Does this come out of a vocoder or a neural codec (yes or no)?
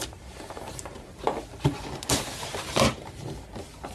no